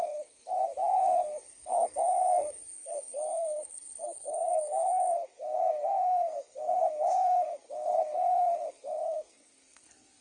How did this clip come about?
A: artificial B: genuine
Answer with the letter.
A